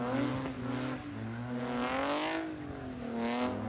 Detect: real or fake real